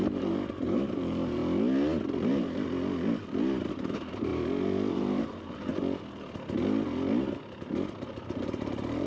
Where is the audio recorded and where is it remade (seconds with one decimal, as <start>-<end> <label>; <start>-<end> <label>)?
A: 0.0-1.4 remade; 1.4-3.7 recorded; 3.7-4.3 remade; 4.3-4.9 recorded; 4.9-5.7 remade; 5.7-7.9 recorded; 7.9-9.1 remade